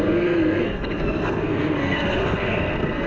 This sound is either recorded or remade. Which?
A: remade